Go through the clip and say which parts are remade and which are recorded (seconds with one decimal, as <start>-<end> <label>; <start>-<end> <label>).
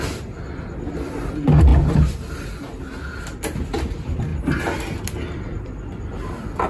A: 0.0-6.7 recorded